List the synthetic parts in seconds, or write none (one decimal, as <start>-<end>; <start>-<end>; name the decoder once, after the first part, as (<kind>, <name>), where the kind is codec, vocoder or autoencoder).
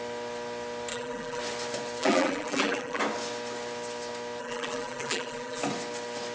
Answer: 0.9-1.4 (vocoder, BigVGAN v2); 2.0-3.0; 4.4-5.6